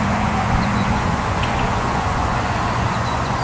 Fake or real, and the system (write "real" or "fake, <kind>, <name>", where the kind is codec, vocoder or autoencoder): fake, vocoder, Vocos